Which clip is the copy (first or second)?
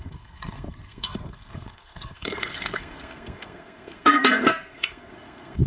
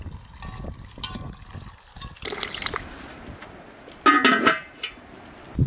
first